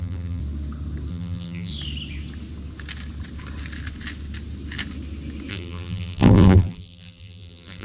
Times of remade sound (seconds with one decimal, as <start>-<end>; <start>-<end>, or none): 0.0-0.4; 1.1-1.7; 5.5-7.8